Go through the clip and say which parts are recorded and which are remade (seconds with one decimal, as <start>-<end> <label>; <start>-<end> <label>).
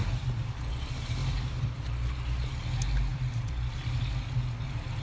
0.0-1.2 recorded; 1.2-1.8 remade; 1.8-3.1 recorded; 3.1-4.1 remade; 4.1-5.0 recorded